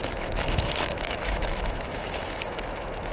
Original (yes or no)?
no